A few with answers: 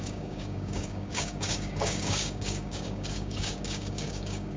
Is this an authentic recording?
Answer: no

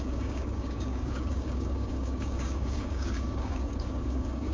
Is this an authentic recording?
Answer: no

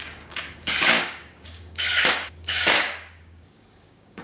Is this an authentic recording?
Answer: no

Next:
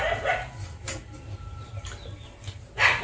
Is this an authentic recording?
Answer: yes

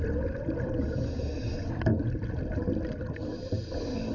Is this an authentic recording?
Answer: yes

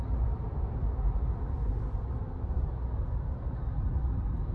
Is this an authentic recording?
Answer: yes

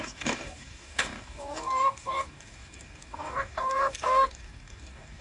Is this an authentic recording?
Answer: no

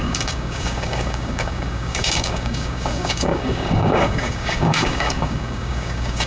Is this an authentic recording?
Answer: no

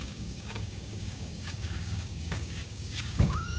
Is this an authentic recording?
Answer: no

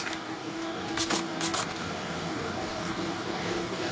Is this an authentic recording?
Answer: no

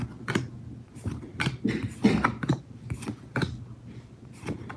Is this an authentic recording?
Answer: yes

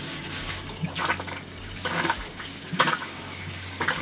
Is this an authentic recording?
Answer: no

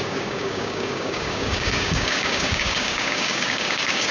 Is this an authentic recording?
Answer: no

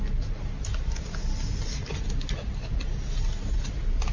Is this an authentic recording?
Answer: yes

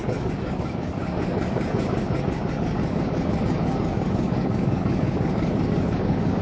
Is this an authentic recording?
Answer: no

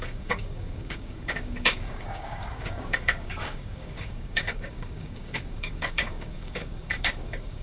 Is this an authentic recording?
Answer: no